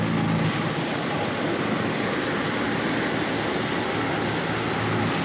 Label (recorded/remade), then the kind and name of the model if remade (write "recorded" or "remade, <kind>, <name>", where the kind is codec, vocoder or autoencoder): recorded